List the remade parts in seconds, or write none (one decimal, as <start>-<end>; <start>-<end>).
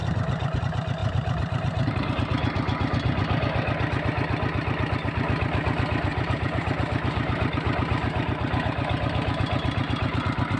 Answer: 0.0-0.6; 1.0-2.1; 6.1-10.2